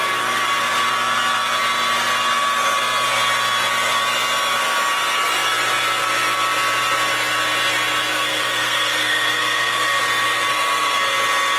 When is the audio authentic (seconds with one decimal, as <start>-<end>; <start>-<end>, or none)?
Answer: 0.0-8.1; 10.0-10.5; 11.0-11.6